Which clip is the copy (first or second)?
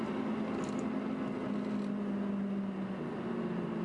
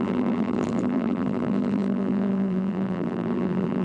second